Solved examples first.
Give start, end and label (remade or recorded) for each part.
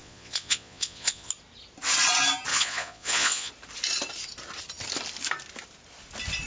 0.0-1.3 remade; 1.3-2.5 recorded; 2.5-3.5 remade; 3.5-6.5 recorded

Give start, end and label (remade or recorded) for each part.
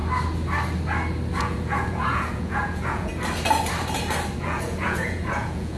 0.0-1.4 recorded; 1.4-3.1 remade; 3.1-4.4 recorded; 4.4-5.8 remade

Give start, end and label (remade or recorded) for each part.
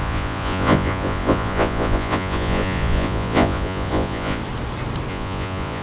0.0-4.4 remade; 4.4-5.1 recorded; 5.1-5.8 remade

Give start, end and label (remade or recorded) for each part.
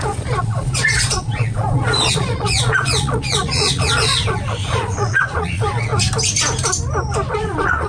0.0-5.9 remade; 5.9-7.3 recorded; 7.3-7.9 remade